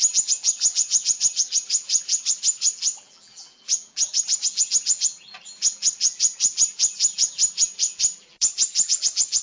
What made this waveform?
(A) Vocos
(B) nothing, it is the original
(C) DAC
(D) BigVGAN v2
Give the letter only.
D